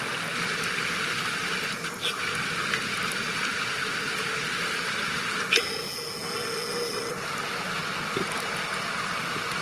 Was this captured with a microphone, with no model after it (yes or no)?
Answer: yes